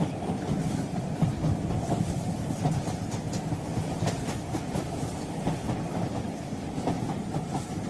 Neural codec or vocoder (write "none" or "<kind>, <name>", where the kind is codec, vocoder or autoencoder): none